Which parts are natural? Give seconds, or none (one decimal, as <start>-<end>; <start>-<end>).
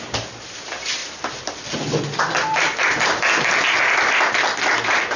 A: 0.0-5.2